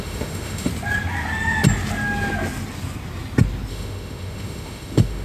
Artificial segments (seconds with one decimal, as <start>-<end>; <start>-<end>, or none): 0.0-0.7; 3.7-5.2